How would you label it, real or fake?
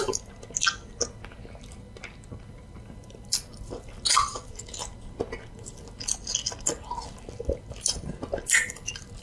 real